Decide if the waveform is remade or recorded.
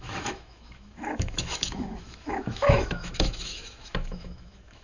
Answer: remade